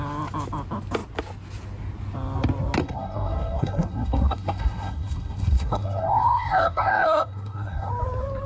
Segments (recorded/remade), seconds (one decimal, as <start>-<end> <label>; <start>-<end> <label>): 0.0-2.8 recorded; 2.8-7.9 remade; 7.9-8.5 recorded